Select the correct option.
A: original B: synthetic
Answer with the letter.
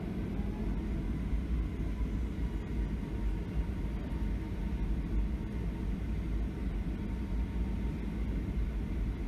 A